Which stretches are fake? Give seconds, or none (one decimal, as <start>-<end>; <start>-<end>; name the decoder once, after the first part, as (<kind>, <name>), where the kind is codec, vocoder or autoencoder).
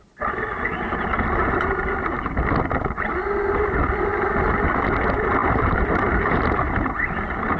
1.4-2.0 (vocoder, BigVGAN v2); 5.4-6.9